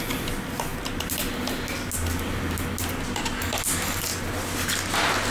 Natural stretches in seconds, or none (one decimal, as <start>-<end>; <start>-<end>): 0.0-5.3